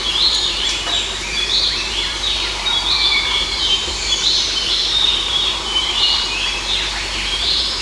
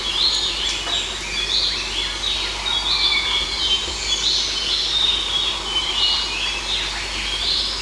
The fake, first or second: first